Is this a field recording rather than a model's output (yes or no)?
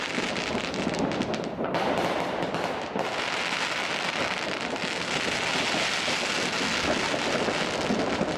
yes